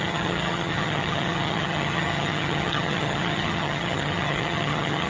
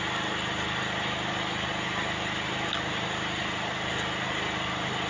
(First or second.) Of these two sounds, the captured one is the second